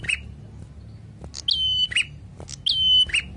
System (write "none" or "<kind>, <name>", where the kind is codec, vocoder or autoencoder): none